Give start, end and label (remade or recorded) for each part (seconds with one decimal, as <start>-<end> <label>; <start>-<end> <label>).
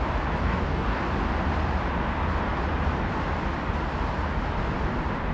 0.0-0.4 recorded; 0.4-1.0 remade; 1.0-5.3 recorded